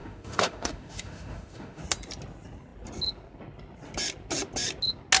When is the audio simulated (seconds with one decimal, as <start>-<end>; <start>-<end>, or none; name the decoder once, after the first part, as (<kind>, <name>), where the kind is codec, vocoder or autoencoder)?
0.0-1.8 (autoencoder, DAC-VAE)